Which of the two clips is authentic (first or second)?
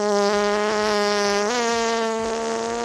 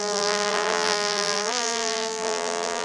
first